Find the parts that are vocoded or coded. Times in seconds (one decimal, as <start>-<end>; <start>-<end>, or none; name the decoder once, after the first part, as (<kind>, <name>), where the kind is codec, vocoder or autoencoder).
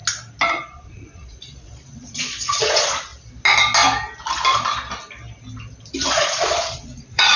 0.5-3.1 (vocoder, Vocos); 6.0-7.4